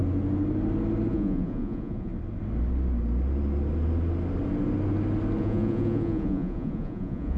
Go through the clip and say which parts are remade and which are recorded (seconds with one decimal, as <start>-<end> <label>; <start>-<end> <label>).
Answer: 0.0-1.1 recorded; 1.1-2.1 remade; 2.1-5.4 recorded; 5.4-7.4 remade